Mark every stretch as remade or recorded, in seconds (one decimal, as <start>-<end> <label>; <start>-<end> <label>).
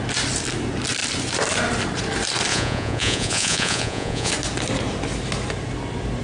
0.0-2.5 recorded; 2.5-4.3 remade; 4.3-6.2 recorded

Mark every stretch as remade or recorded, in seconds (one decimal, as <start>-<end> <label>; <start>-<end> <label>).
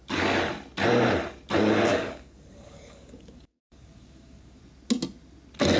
0.0-1.9 recorded; 1.9-4.6 remade; 4.6-5.8 recorded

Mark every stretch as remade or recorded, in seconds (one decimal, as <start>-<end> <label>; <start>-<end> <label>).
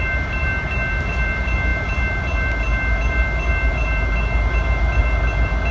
0.0-5.7 recorded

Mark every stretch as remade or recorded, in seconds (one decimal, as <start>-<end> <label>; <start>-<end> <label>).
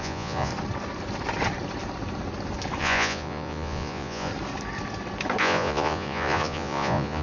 0.0-0.5 remade; 0.5-2.8 recorded; 2.8-4.3 remade; 4.3-5.4 recorded; 5.4-7.2 remade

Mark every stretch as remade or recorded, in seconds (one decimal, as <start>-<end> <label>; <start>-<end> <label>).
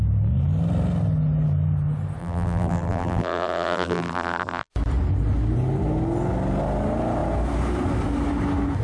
0.0-2.2 recorded; 2.2-4.7 remade; 4.7-8.8 recorded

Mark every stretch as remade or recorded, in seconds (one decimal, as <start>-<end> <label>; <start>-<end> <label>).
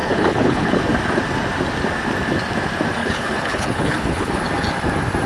0.0-0.8 remade; 0.8-3.0 recorded; 3.0-4.4 remade; 4.4-5.3 recorded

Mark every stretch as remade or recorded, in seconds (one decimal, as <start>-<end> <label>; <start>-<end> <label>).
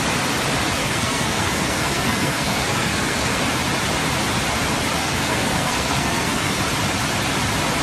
0.0-0.8 recorded; 0.8-3.4 remade; 3.4-5.0 recorded; 5.0-6.5 remade; 6.5-7.8 recorded